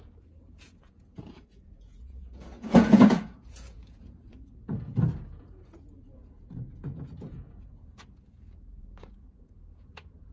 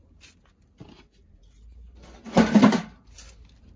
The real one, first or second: second